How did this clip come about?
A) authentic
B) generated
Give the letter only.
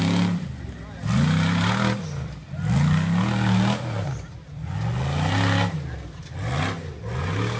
A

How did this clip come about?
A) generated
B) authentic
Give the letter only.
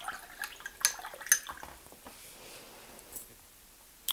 B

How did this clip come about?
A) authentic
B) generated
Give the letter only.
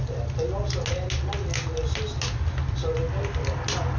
A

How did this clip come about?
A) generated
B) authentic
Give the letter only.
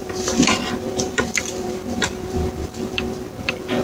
A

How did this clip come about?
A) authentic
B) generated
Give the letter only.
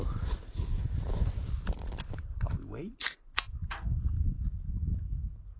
A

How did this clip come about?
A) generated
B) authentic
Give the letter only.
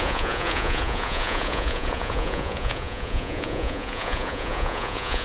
A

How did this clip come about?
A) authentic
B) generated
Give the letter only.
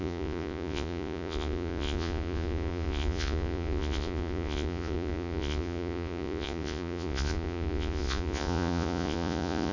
B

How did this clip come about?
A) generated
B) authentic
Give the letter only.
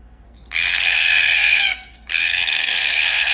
A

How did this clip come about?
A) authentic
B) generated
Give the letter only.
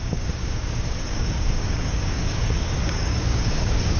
B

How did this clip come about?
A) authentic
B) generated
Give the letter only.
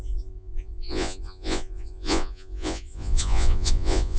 B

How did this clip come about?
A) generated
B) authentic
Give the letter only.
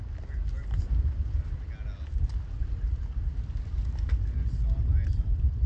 B